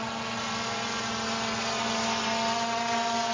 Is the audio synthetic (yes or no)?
no